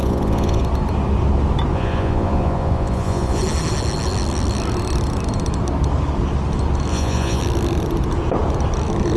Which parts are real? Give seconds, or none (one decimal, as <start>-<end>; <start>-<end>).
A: 0.6-1.7; 3.4-6.9; 7.4-9.2